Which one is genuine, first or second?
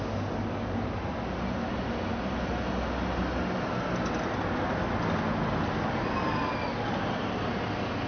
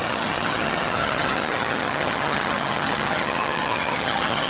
first